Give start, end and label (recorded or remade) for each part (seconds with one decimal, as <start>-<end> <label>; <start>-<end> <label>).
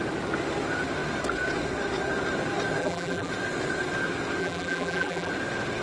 0.0-2.8 recorded; 2.8-3.3 remade; 3.3-4.4 recorded; 4.4-5.3 remade; 5.3-5.8 recorded